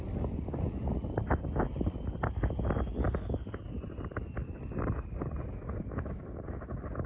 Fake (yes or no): no